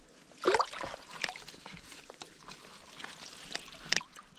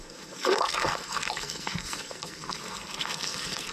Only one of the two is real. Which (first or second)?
first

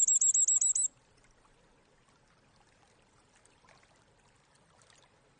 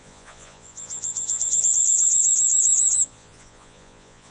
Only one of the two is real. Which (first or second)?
first